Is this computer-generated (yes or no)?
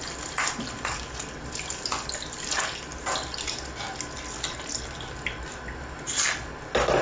no